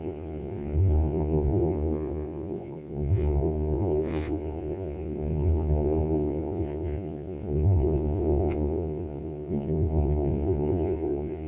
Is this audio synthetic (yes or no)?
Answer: yes